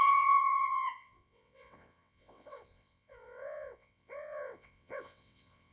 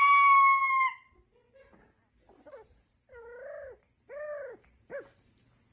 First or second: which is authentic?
second